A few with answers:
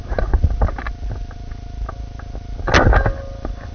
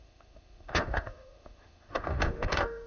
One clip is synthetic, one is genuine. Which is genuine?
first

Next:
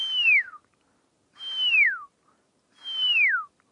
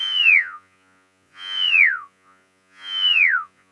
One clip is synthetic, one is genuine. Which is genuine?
first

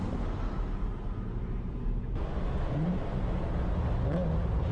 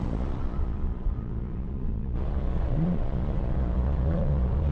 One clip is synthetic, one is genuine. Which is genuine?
first